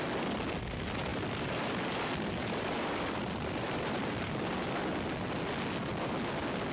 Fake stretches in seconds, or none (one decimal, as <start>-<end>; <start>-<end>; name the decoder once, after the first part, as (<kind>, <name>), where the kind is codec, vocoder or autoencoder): 1.1-4.9 (vocoder, BigVGAN v2)